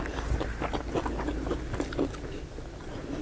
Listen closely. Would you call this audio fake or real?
real